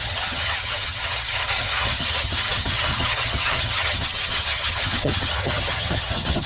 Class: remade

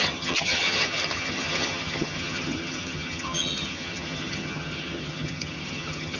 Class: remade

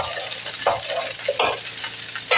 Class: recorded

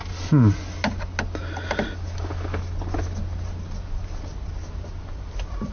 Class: recorded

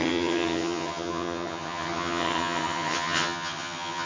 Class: remade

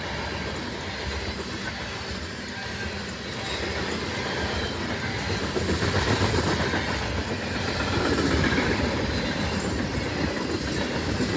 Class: recorded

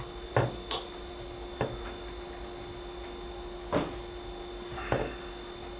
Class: recorded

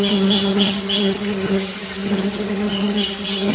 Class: remade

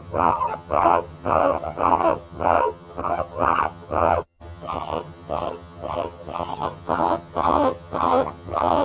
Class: remade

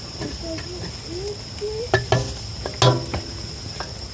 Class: recorded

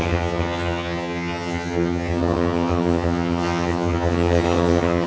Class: remade